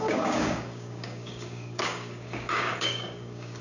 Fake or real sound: fake